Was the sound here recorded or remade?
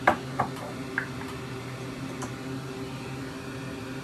recorded